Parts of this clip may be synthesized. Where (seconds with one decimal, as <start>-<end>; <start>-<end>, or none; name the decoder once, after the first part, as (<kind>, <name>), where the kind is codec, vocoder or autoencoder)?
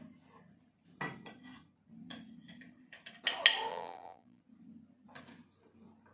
3.7-4.4 (vocoder, BigVGAN v2)